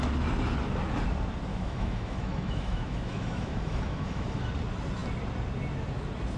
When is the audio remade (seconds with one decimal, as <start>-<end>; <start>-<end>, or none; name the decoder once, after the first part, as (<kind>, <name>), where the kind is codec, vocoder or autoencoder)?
1.5-4.5 (autoencoder, DAC-VAE)